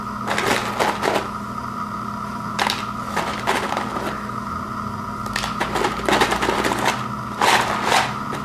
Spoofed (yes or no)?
no